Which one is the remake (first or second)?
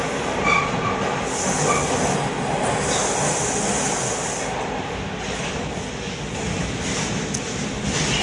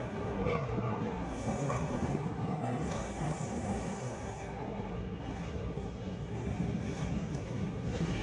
second